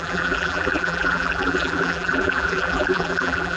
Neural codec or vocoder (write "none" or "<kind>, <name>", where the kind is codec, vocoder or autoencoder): vocoder, BigVGAN v2